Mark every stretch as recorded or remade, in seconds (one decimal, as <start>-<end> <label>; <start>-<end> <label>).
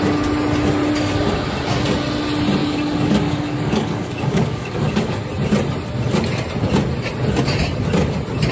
0.0-2.6 recorded; 2.6-5.2 remade; 5.2-8.5 recorded